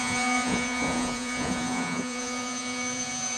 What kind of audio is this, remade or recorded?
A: remade